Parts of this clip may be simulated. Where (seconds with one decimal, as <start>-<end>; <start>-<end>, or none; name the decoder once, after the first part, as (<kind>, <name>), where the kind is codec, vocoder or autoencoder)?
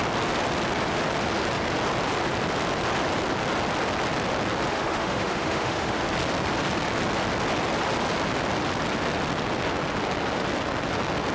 4.7-6.0 (autoencoder, DAC-VAE)